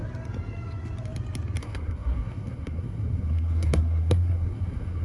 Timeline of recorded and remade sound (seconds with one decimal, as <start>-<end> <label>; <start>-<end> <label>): 0.0-1.6 recorded; 1.6-5.0 remade